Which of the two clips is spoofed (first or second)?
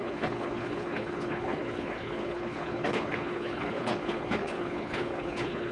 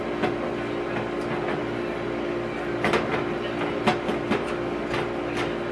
first